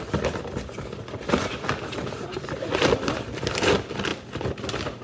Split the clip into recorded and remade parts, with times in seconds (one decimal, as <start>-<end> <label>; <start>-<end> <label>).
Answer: 0.0-5.0 recorded